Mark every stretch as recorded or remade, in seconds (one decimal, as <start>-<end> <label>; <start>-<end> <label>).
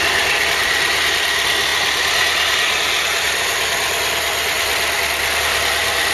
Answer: 0.0-6.1 recorded